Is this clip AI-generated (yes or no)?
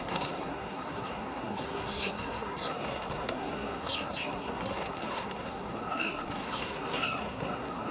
yes